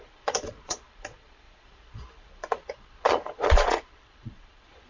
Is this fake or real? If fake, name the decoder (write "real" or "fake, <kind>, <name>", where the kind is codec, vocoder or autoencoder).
fake, vocoder, Vocos